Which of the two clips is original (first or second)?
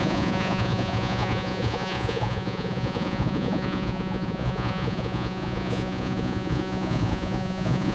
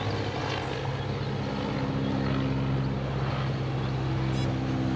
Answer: second